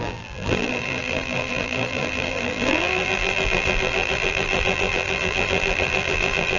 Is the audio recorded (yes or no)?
no